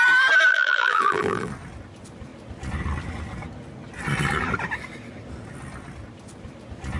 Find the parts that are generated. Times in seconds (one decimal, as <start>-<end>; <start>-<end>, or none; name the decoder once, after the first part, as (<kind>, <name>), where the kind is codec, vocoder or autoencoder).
0.5-1.5 (vocoder, BigVGAN v2)